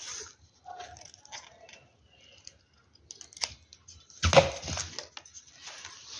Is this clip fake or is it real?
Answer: real